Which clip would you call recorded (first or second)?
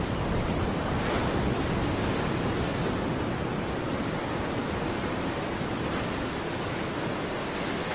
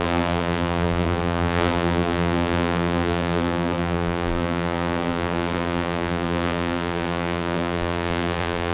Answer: first